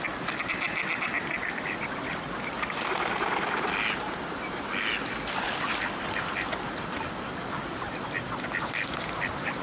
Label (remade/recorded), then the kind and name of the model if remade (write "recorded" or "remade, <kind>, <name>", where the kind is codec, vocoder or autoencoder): recorded